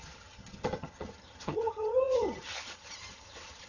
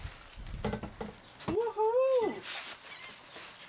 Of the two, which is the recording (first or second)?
second